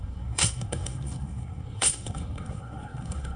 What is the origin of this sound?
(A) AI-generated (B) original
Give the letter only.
A